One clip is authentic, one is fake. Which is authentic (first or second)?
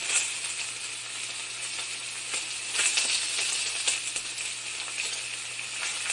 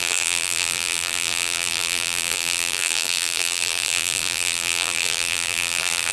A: first